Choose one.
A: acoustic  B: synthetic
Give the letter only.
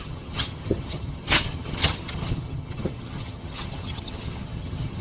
B